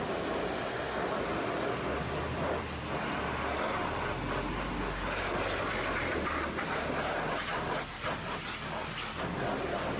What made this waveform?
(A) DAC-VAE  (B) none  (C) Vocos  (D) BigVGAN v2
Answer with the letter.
B